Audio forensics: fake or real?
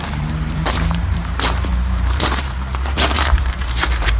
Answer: fake